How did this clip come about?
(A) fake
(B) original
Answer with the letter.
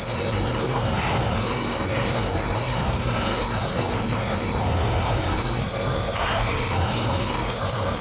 A